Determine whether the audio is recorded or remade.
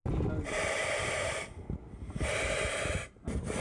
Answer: recorded